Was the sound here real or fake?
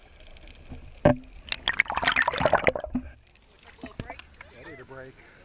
real